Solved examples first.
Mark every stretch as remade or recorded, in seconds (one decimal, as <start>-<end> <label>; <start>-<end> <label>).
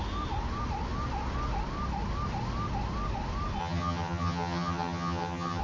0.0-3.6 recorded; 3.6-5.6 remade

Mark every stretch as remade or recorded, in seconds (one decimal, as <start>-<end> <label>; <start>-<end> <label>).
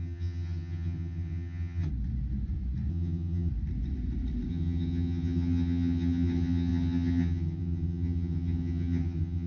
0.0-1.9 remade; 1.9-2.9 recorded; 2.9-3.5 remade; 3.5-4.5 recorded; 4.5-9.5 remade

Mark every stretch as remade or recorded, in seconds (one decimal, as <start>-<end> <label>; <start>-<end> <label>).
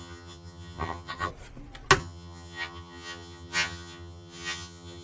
0.0-1.3 remade; 1.3-2.0 recorded; 2.0-5.0 remade